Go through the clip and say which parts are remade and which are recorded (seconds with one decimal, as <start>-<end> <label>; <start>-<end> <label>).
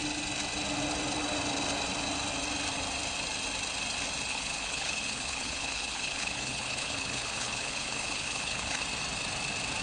0.0-4.3 recorded; 4.3-8.8 remade; 8.8-9.8 recorded